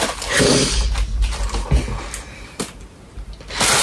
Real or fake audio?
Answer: real